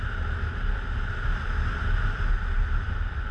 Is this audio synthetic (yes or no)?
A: no